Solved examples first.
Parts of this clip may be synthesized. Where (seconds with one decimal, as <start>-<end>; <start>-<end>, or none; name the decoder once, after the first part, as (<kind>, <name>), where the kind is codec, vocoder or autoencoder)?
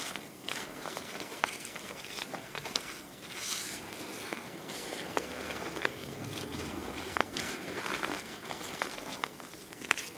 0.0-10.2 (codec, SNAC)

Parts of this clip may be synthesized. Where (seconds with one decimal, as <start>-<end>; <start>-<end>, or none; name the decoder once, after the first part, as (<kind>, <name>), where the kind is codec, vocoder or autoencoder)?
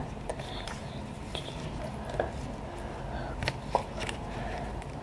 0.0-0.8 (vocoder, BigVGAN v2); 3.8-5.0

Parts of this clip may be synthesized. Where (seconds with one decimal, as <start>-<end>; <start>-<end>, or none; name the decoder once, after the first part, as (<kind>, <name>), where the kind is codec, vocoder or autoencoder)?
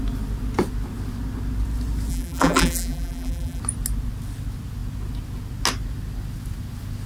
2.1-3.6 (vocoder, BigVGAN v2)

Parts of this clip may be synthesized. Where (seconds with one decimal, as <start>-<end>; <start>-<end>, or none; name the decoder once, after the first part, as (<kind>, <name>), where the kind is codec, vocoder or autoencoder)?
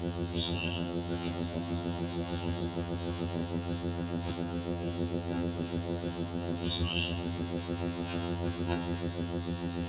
0.0-9.9 (vocoder, HiFi-GAN)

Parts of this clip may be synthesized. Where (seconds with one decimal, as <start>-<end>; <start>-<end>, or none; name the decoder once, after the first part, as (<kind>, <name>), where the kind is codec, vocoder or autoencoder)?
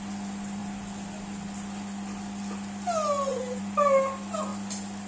none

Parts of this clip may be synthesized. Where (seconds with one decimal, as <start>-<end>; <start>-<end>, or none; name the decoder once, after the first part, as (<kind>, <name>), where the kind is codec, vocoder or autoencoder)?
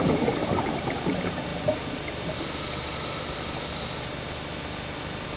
0.4-1.1 (vocoder, BigVGAN v2)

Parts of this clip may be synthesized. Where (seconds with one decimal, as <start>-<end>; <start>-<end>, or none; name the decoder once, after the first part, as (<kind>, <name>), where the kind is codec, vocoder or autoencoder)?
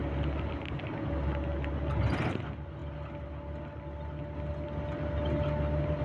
none